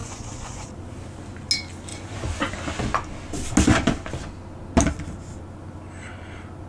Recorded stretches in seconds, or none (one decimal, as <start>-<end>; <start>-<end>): 0.7-1.9; 2.5-6.7